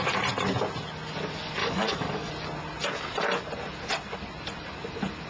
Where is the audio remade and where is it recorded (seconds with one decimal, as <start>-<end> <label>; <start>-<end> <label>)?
0.0-1.6 recorded; 1.6-2.3 remade; 2.3-5.3 recorded